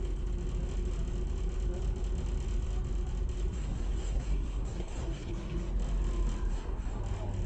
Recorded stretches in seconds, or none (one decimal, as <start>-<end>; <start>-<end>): 0.0-3.5; 5.7-6.5; 7.0-7.5